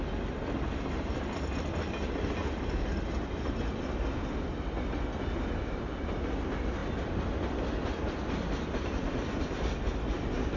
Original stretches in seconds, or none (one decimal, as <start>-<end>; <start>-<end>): 0.0-10.6